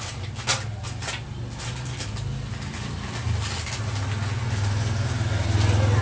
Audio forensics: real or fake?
real